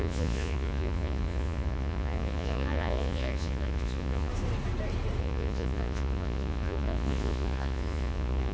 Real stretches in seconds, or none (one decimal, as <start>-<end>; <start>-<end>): 4.3-5.2